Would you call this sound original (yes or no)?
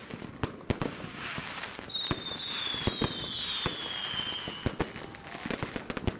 yes